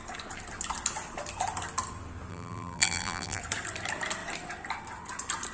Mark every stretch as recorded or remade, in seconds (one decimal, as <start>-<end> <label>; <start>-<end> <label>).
0.0-2.3 recorded; 2.3-3.4 remade; 3.4-5.5 recorded